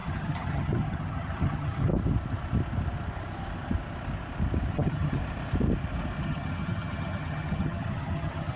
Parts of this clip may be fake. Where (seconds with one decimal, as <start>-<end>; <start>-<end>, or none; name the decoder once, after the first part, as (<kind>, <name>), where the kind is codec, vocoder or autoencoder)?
0.0-1.9 (vocoder, HiFi-GAN); 4.7-5.2; 6.2-8.6